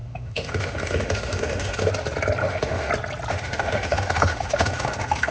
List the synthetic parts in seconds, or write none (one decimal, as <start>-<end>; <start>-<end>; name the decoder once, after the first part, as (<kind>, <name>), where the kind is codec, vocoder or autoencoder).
0.0-1.9 (autoencoder, DAC-VAE); 2.4-2.9; 3.3-5.3